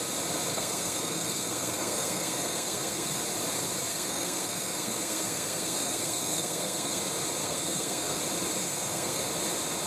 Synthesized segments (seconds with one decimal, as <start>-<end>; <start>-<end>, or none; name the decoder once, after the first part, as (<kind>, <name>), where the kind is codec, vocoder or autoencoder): 0.5-3.2 (codec, SNAC); 3.9-7.0; 7.4-8.2; 8.6-9.2